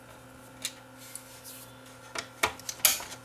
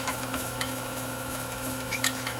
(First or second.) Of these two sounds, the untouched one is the first